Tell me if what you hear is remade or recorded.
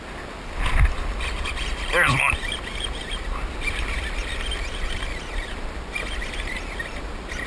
recorded